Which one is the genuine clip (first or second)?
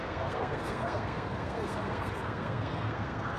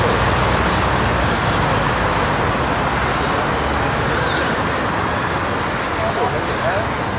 second